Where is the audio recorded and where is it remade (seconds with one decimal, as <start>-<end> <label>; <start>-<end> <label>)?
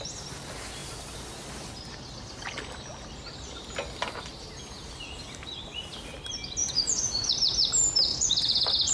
0.0-6.6 recorded; 6.6-7.3 remade; 7.3-8.1 recorded; 8.1-8.9 remade